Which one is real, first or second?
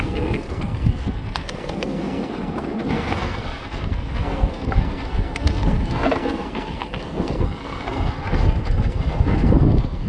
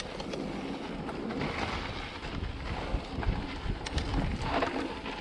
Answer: second